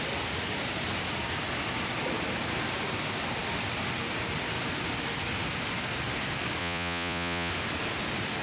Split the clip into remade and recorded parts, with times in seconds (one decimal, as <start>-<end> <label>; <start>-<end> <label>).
0.0-6.6 recorded; 6.6-7.5 remade; 7.5-8.4 recorded